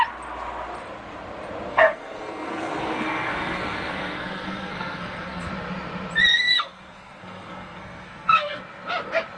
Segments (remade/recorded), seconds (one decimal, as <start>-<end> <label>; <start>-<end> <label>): 0.0-1.7 recorded; 1.7-5.5 remade; 5.5-6.3 recorded; 6.3-8.6 remade; 8.6-9.4 recorded